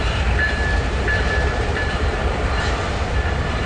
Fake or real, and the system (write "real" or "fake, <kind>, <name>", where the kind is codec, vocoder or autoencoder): fake, vocoder, BigVGAN v2